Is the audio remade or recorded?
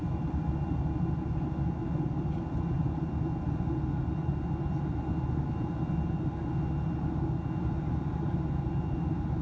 recorded